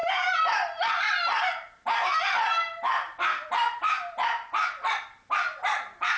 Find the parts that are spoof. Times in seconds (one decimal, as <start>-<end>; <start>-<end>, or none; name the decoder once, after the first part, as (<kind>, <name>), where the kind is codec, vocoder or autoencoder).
0.9-6.2 (vocoder, BigVGAN v2)

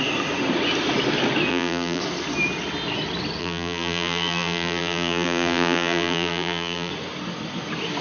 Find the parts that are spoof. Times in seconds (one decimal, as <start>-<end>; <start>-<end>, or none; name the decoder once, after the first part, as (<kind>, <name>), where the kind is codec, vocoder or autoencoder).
1.5-2.0 (vocoder, BigVGAN v2); 3.4-6.9

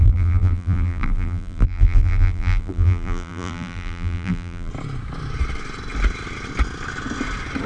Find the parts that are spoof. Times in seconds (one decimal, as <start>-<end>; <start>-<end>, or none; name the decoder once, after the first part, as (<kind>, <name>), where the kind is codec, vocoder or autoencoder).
0.0-4.7 (vocoder, BigVGAN v2)